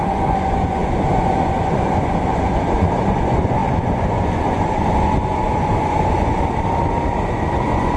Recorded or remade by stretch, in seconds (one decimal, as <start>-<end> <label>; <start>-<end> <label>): 0.0-6.3 remade; 6.3-7.3 recorded; 7.3-8.0 remade